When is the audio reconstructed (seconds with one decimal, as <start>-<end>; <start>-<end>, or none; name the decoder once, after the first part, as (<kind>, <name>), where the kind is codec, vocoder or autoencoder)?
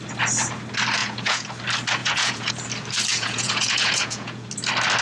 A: 1.0-1.5 (vocoder, Vocos); 2.0-2.5; 3.1-4.5